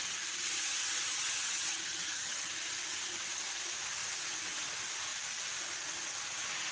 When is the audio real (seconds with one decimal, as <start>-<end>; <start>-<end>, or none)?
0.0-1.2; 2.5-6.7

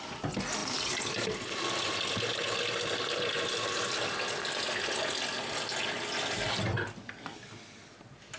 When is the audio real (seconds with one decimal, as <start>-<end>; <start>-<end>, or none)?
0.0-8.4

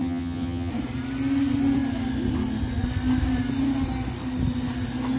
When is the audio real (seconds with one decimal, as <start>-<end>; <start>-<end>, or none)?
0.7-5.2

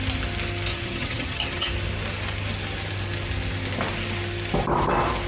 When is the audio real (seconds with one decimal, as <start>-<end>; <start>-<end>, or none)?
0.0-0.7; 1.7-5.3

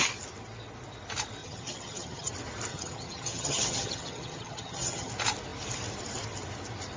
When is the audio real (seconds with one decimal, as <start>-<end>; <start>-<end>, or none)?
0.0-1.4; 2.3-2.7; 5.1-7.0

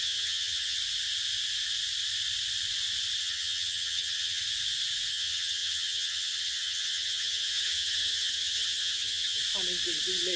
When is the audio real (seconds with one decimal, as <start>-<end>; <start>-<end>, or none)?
0.8-3.2; 4.4-5.1; 9.4-10.4